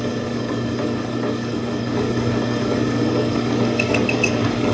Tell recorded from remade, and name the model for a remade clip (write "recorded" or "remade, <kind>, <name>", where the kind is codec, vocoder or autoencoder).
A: remade, codec, DAC